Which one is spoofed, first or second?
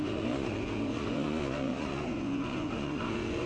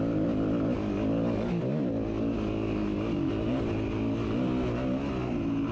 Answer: first